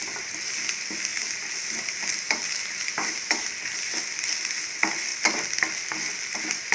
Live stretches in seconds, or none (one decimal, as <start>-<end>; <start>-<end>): 0.0-6.7